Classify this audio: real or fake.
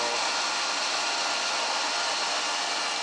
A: real